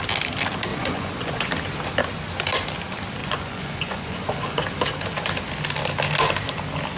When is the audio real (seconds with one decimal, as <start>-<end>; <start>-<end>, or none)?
0.0-0.7; 1.4-3.2; 4.6-7.0